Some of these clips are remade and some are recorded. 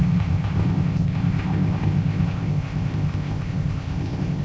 remade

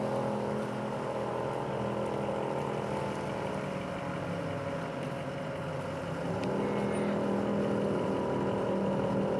recorded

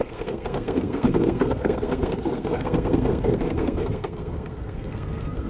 remade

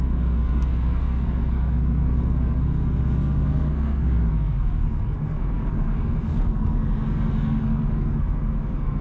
remade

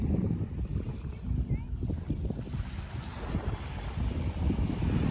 recorded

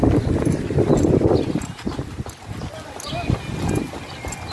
recorded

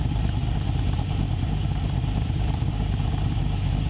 remade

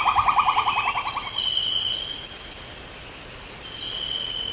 recorded